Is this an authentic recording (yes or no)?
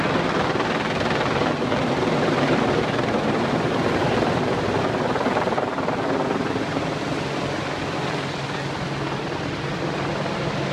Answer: yes